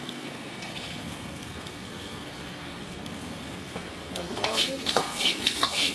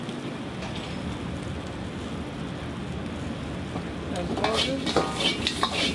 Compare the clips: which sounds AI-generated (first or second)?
first